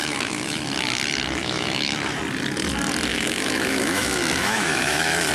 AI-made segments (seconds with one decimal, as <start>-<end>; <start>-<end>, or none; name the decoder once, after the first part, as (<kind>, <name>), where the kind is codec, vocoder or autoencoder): 0.0-0.6 (autoencoder, DAC-VAE); 1.4-2.2; 3.1-5.3